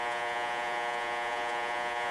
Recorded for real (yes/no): no